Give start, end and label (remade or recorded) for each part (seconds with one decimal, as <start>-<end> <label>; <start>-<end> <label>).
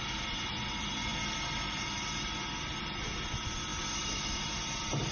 0.0-5.1 recorded